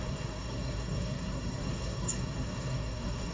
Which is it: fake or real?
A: fake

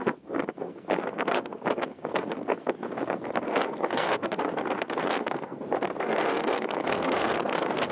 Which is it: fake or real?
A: fake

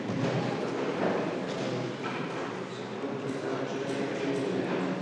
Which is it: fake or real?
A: real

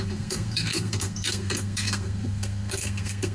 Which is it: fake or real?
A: fake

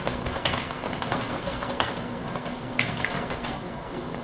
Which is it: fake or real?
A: fake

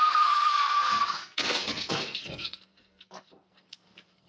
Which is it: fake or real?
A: fake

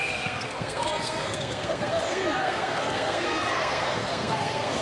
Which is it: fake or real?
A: fake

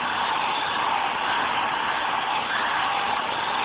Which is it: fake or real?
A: real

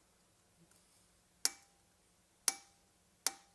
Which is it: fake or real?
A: real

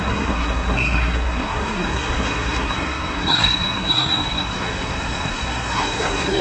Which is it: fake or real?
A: fake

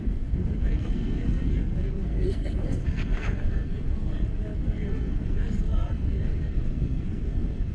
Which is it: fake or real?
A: fake